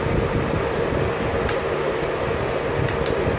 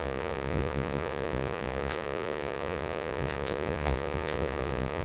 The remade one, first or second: second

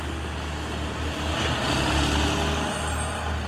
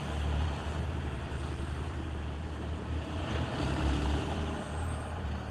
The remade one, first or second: second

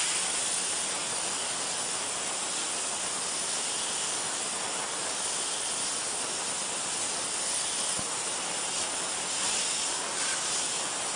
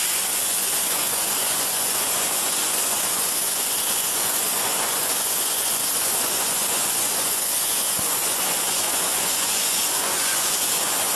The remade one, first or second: second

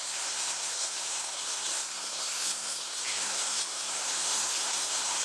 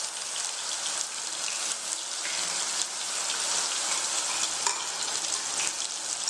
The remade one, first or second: first